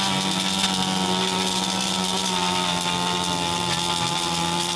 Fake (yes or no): no